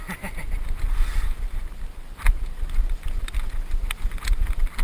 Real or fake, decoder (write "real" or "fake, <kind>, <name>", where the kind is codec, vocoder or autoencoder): real